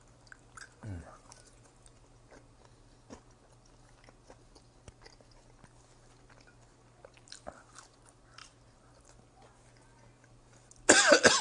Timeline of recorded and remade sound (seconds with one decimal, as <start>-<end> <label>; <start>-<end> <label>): 0.0-0.8 recorded; 0.8-1.3 remade; 1.3-11.4 recorded